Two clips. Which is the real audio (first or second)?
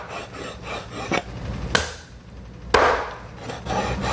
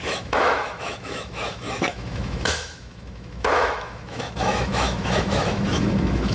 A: first